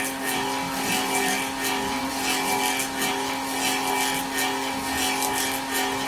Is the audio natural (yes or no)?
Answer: yes